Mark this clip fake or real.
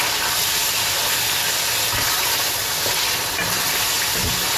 real